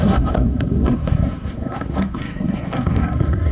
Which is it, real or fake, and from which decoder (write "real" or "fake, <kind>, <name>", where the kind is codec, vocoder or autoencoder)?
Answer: fake, codec, SNAC